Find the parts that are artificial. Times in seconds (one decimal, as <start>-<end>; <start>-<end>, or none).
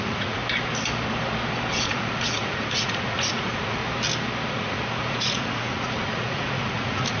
0.0-0.4; 1.7-3.8; 4.5-7.2